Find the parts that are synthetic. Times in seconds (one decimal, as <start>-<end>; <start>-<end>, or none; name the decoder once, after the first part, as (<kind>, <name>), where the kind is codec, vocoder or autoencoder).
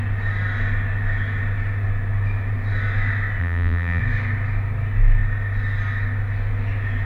3.4-4.0 (vocoder, BigVGAN v2)